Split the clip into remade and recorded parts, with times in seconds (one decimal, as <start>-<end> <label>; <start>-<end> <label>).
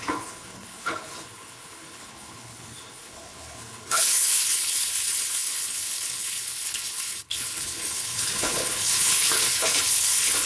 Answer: 0.0-10.5 remade